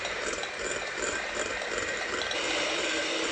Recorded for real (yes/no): no